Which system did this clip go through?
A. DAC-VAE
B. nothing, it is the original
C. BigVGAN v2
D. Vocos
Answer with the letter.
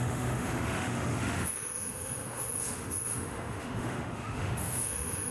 A